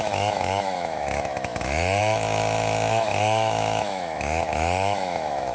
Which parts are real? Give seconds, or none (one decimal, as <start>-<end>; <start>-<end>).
none